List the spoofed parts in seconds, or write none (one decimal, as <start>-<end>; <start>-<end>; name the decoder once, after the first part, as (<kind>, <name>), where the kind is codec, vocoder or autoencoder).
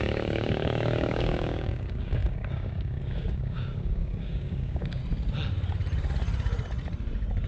0.0-5.0 (codec, DAC)